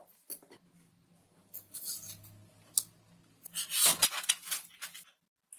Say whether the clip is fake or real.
real